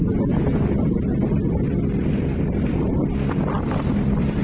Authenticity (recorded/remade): recorded